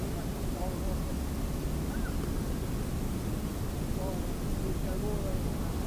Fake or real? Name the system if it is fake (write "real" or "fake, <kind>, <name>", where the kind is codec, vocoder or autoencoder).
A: real